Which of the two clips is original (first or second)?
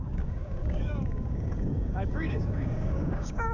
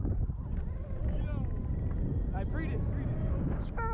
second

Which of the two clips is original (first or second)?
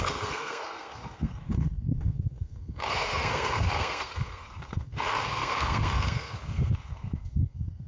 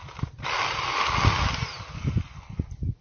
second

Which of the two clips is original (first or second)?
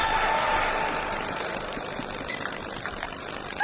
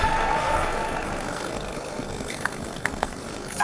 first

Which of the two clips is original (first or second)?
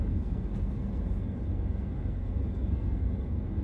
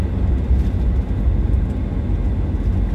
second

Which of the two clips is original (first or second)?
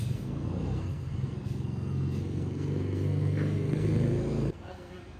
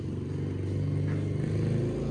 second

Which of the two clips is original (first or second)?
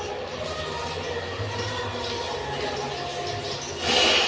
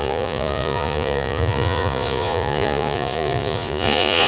first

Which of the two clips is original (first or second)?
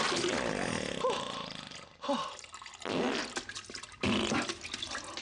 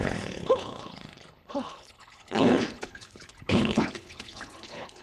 first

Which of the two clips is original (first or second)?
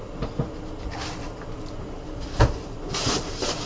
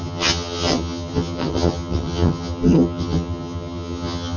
first